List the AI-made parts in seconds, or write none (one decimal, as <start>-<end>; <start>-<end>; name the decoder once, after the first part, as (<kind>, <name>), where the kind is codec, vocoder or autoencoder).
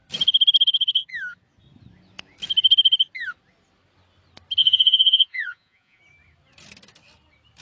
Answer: 4.6-6.0 (vocoder, Vocos)